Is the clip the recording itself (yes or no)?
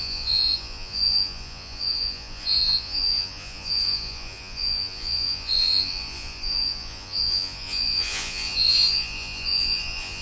no